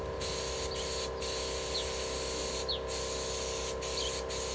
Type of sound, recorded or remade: recorded